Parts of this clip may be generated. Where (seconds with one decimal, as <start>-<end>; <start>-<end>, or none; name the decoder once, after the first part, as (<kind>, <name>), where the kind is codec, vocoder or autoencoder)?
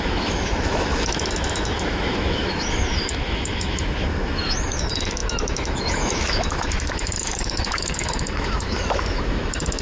0.0-9.8 (autoencoder, DAC-VAE)